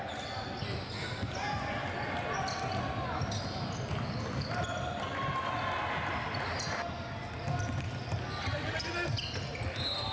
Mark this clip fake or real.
real